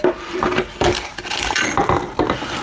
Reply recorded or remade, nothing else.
recorded